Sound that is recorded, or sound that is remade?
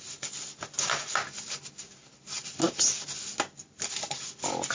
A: recorded